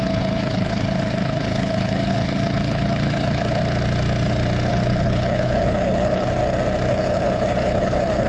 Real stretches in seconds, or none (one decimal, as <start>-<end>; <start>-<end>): 3.6-4.7; 6.4-6.9